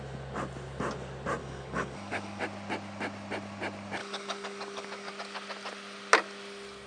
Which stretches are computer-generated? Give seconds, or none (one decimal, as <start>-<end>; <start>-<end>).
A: 1.4-2.4; 4.0-5.1